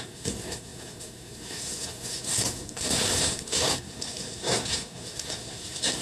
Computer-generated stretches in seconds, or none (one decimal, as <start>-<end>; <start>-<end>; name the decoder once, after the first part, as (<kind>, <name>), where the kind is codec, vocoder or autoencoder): 0.0-6.0 (codec, SNAC)